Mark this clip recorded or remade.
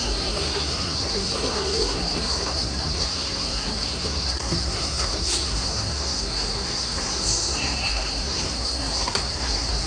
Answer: remade